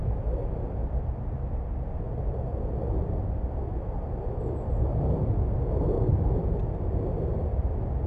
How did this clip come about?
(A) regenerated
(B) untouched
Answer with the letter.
B